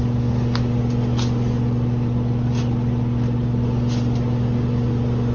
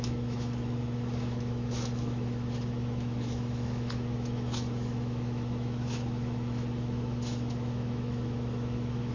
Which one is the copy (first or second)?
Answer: second